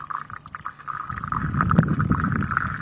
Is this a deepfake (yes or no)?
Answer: no